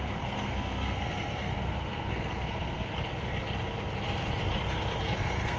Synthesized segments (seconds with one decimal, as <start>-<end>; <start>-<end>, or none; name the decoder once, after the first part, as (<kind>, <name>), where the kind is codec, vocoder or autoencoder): 0.0-2.9 (codec, SNAC); 5.0-5.6